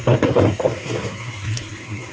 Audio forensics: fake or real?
fake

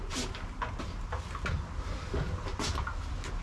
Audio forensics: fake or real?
real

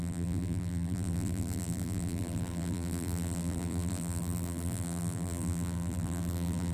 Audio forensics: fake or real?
fake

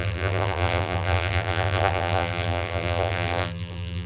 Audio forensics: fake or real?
fake